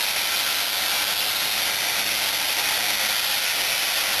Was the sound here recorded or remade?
recorded